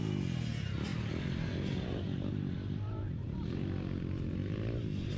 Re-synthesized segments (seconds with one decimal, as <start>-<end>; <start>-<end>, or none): none